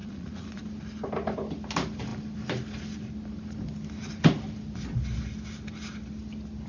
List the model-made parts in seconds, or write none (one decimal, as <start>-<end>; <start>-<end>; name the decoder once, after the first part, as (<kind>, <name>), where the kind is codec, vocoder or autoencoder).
0.0-0.6 (vocoder, Vocos)